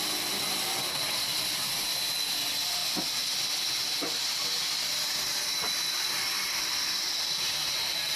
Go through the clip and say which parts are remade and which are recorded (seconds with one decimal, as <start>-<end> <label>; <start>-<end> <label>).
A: 0.0-8.2 recorded

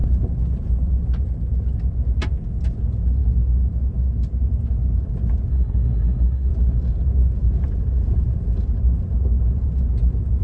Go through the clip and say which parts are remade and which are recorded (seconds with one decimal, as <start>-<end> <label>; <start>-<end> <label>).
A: 0.0-5.5 recorded; 5.5-6.5 remade; 6.5-10.4 recorded

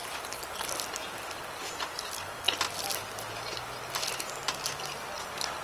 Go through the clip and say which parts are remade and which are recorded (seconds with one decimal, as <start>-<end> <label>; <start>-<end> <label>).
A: 0.0-5.6 recorded

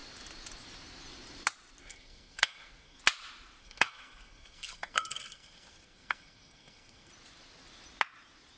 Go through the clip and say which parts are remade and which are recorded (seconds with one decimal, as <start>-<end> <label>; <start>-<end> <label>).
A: 0.0-1.8 recorded; 1.8-3.0 remade; 3.0-3.6 recorded; 3.6-7.1 remade; 7.1-8.6 recorded

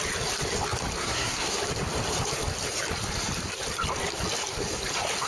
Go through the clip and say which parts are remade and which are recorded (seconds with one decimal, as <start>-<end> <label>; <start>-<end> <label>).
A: 0.0-1.0 recorded; 1.0-1.6 remade; 1.6-5.3 recorded

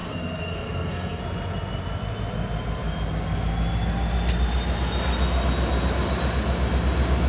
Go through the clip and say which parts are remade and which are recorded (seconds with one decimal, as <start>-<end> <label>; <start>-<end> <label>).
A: 0.0-1.2 remade; 1.2-7.3 recorded

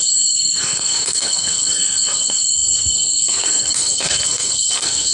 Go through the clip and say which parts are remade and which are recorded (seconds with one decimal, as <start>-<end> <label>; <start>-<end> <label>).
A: 0.0-5.1 remade

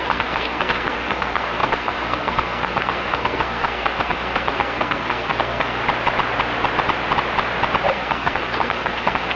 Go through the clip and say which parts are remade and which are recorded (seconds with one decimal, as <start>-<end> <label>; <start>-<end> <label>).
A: 0.0-5.8 remade; 5.8-7.9 recorded; 7.9-9.4 remade